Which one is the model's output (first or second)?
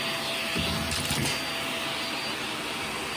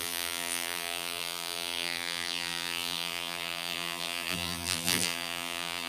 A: second